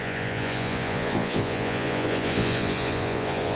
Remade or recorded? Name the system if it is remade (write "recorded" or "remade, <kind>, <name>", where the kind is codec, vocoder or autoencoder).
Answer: remade, vocoder, Vocos